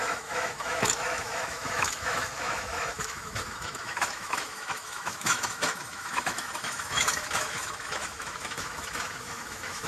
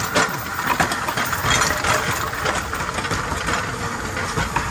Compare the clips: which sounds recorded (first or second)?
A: second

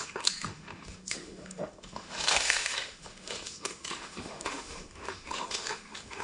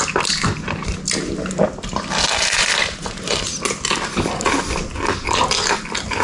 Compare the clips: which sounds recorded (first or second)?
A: second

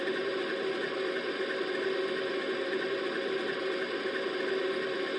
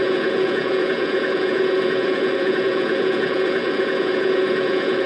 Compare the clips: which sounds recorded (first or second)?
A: first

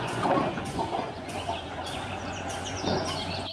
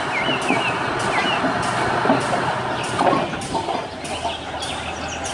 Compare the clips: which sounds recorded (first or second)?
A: second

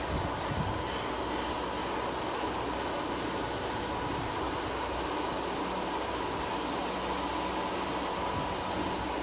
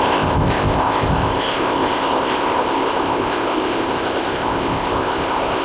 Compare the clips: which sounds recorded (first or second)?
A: first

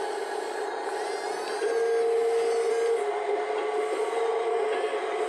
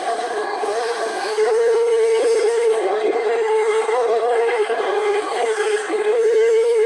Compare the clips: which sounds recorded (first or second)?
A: first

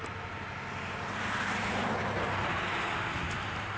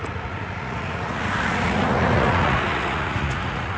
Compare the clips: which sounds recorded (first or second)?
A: first